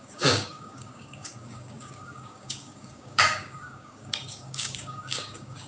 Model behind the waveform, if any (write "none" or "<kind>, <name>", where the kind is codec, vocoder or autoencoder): codec, DAC